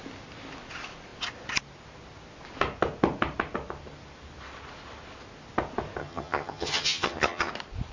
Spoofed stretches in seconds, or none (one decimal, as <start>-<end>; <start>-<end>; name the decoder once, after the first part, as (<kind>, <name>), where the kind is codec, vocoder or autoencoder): 6.0-7.5 (vocoder, HiFi-GAN)